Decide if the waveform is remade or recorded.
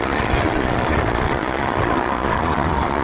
remade